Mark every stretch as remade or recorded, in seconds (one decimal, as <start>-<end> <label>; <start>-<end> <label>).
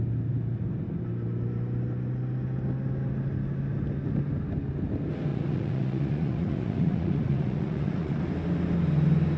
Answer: 0.0-5.3 recorded; 5.3-8.2 remade; 8.2-9.4 recorded